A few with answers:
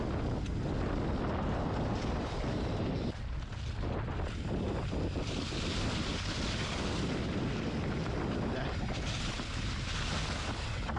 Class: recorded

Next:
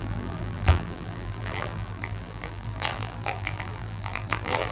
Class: remade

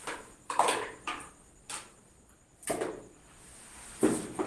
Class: remade